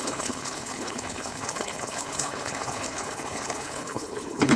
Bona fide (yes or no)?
no